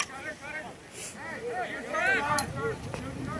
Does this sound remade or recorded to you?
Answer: recorded